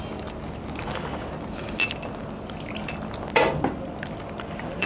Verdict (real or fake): real